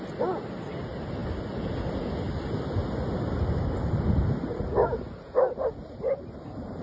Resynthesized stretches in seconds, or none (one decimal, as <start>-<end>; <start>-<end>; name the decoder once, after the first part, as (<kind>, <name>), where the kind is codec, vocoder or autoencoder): none